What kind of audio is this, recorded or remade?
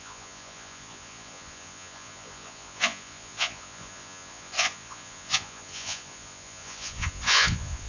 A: remade